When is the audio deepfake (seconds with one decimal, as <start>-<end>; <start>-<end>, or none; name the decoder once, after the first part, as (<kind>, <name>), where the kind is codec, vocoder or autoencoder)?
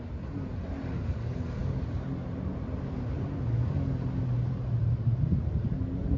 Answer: none